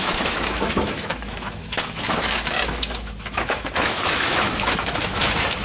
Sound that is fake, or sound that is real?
fake